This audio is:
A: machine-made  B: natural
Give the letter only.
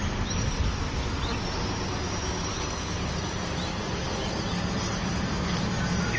B